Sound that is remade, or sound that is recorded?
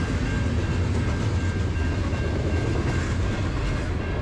recorded